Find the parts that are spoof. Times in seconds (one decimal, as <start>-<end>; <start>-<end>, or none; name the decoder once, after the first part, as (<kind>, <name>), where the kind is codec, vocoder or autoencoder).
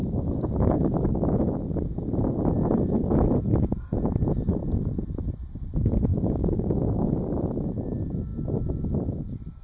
0.0-1.4 (codec, DAC); 6.1-7.2